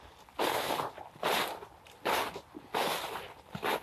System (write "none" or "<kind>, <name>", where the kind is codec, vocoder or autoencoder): none